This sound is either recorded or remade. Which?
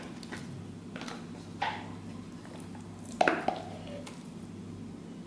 recorded